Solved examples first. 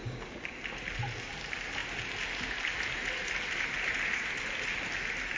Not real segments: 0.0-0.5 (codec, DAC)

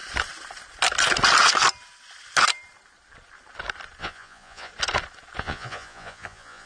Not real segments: 4.0-4.7 (vocoder, Vocos); 5.4-6.7

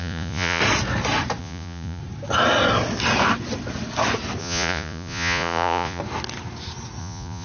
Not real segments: 0.0-0.6 (vocoder, Vocos); 1.4-2.0; 4.4-6.0; 7.0-7.4

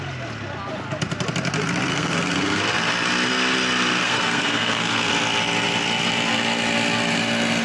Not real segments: 1.9-2.6 (codec, SNAC); 4.0-5.1

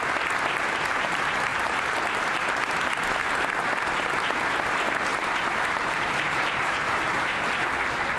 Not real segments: 1.5-2.4 (vocoder, BigVGAN v2); 5.1-7.5

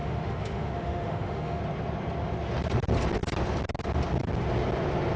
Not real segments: 0.0-1.6 (autoencoder, DAC-VAE)